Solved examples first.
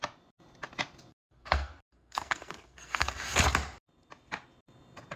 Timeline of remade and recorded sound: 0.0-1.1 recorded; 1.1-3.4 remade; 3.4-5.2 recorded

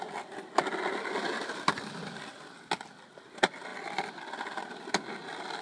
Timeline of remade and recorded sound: 0.0-5.6 recorded

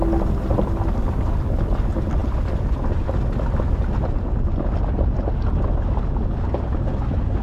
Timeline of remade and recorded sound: 0.0-7.4 recorded

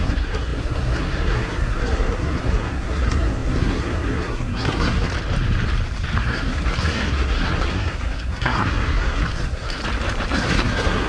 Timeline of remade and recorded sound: 0.0-5.1 remade; 5.1-6.2 recorded; 6.2-9.8 remade; 9.8-10.3 recorded; 10.3-11.1 remade

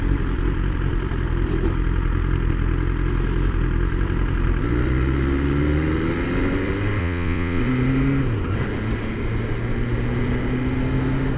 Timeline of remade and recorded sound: 0.0-7.0 recorded; 7.0-7.6 remade; 7.6-11.4 recorded

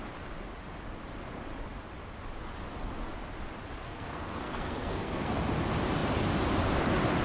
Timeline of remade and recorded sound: 0.0-3.8 recorded; 3.8-5.3 remade; 5.3-7.2 recorded

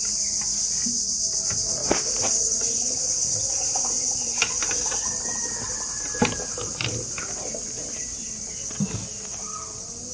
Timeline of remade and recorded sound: 0.0-10.1 recorded